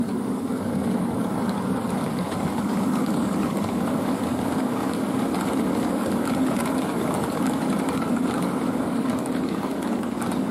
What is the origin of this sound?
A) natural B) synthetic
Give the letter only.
B